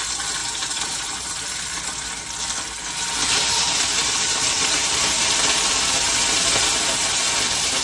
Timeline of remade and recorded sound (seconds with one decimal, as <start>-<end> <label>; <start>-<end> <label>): 0.0-0.4 recorded; 0.4-1.7 remade; 1.7-3.2 recorded; 3.2-5.3 remade; 5.3-7.8 recorded